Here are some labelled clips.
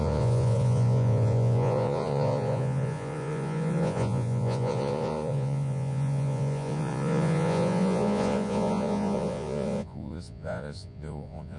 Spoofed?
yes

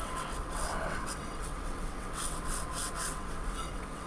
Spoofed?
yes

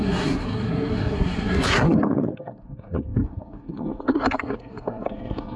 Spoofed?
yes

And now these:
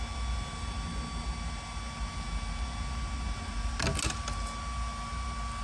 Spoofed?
no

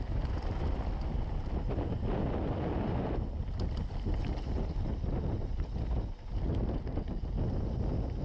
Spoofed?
no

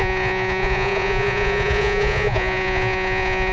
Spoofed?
yes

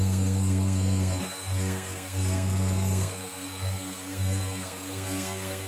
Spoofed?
yes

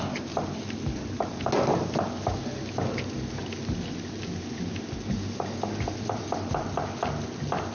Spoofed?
no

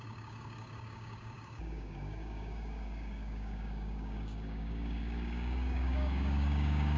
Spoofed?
yes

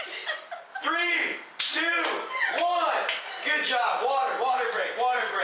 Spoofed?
no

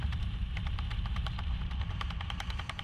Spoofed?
yes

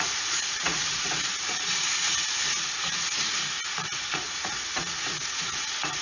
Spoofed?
yes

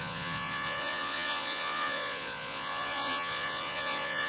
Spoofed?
yes